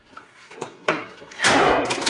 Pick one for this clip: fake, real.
fake